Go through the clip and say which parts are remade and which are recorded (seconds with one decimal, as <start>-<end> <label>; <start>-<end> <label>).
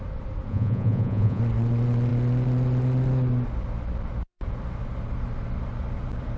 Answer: 0.0-0.5 recorded; 0.5-1.4 remade; 1.4-6.4 recorded